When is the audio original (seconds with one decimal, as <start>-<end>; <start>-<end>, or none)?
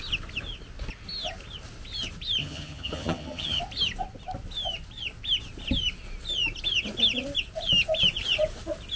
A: 0.0-2.4; 3.6-9.0